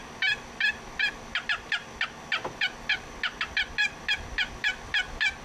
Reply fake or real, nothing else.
real